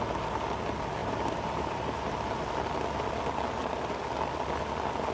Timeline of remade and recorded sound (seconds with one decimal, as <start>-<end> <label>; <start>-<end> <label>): 0.0-1.0 recorded; 1.0-2.0 remade; 2.0-5.1 recorded